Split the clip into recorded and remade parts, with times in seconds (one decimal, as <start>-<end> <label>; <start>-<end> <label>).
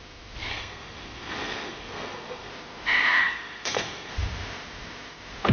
0.0-0.5 recorded; 0.5-2.5 remade; 2.5-3.2 recorded; 3.2-4.1 remade; 4.1-5.5 recorded